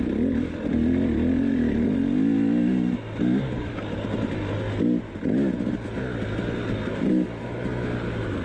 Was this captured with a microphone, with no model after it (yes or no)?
yes